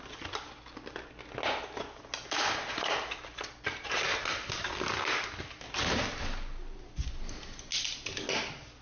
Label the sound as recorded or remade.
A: recorded